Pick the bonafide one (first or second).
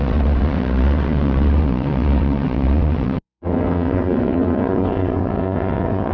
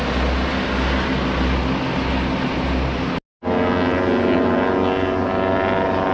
second